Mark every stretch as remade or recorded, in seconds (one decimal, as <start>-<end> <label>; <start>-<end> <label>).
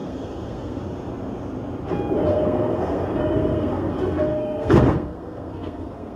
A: 0.0-0.8 remade; 0.8-2.3 recorded; 2.3-6.2 remade